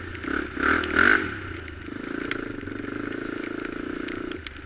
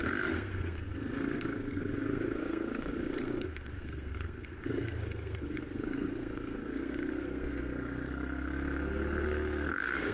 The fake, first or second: second